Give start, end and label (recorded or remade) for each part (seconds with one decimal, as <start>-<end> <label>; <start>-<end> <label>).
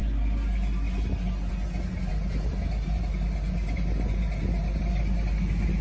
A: 0.0-5.8 recorded